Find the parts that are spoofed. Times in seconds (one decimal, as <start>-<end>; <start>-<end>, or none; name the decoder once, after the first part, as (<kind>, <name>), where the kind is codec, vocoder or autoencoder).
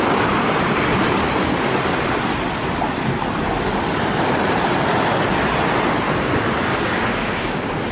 6.7-7.9 (codec, DAC)